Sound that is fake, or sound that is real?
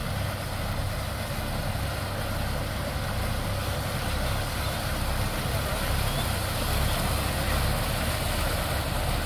real